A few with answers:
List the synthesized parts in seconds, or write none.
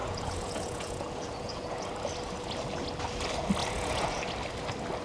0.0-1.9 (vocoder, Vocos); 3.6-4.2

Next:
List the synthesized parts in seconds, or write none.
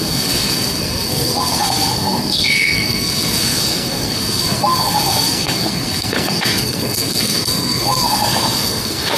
0.0-9.2 (codec, SNAC)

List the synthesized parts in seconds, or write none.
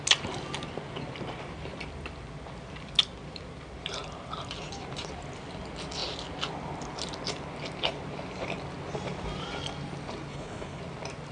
10.3-10.8 (codec, HILCodec)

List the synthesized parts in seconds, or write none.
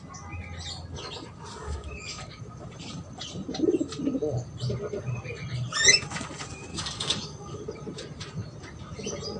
1.6-2.4 (codec, DAC); 6.7-7.6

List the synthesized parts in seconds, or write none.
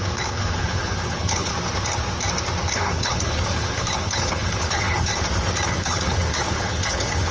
0.0-1.5 (codec, HILCodec); 2.7-5.1; 5.7-7.3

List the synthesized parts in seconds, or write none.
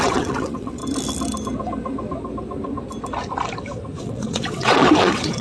0.0-0.8 (vocoder, WaveNeXt); 4.0-5.4